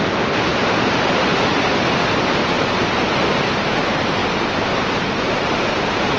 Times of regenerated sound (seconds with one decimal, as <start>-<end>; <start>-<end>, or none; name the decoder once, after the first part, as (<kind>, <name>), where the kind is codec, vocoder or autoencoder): 0.5-2.0 (vocoder, BigVGAN v2)